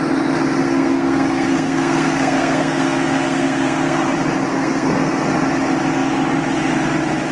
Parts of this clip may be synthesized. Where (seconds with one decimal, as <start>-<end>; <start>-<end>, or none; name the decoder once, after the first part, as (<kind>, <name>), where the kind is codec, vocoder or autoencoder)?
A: 0.6-4.1 (codec, SNAC); 4.5-5.3